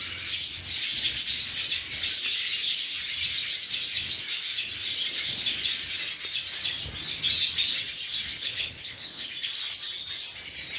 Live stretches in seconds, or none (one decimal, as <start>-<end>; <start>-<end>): 0.0-8.3; 9.3-10.8